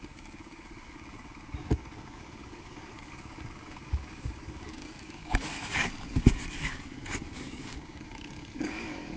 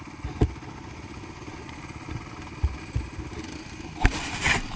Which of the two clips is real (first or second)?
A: second